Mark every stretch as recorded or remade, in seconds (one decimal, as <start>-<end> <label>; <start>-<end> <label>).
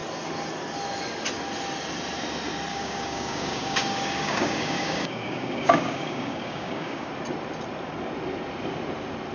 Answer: 0.0-2.7 recorded; 2.7-7.1 remade; 7.1-9.3 recorded